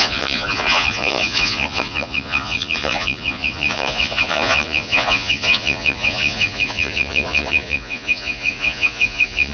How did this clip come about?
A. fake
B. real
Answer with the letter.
A